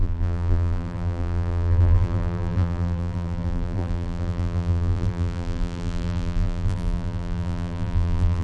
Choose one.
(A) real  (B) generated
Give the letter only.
B